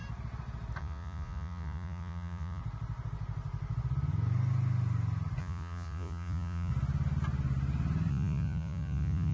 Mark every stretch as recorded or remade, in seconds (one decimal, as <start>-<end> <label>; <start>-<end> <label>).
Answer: 0.0-0.8 recorded; 0.8-2.6 remade; 2.6-5.4 recorded; 5.4-6.7 remade; 6.7-8.1 recorded; 8.1-9.3 remade